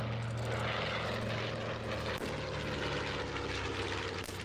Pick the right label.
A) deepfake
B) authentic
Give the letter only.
B